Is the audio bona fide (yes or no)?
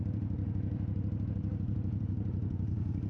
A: no